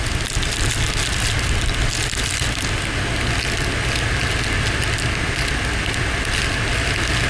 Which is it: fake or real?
real